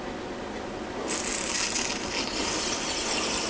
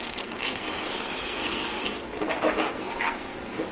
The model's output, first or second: second